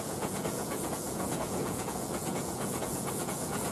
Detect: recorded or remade remade